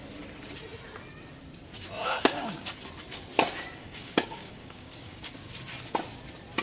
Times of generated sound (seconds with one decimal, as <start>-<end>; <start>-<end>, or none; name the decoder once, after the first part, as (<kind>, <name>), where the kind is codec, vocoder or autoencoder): 2.0-2.7 (codec, DAC); 3.8-5.3